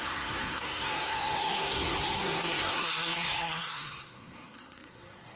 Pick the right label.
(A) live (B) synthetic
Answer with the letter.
B